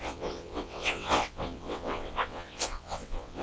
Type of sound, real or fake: fake